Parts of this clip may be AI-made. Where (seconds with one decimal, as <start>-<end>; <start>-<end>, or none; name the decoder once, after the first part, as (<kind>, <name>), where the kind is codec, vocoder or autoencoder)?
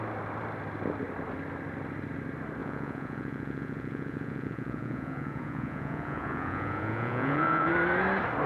2.6-7.7 (vocoder, Vocos)